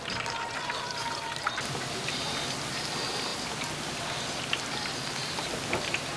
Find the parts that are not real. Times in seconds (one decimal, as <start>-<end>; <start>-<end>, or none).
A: none

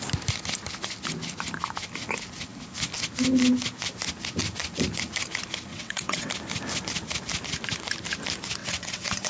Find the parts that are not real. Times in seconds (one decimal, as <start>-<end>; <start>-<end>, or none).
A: 5.7-6.3; 8.6-9.3

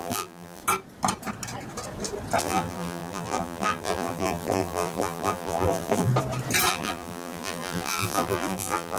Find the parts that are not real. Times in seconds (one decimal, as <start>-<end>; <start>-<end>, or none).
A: 0.0-0.6; 2.4-6.1; 6.7-9.0